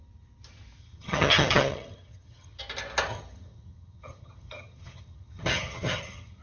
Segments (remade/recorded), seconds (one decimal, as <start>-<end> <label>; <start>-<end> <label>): 0.0-0.8 recorded; 0.8-2.6 remade; 2.6-3.1 recorded; 3.1-6.4 remade